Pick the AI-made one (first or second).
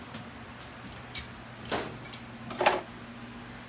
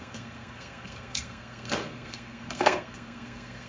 second